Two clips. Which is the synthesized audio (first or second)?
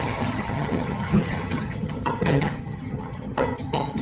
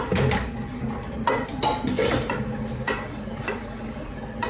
first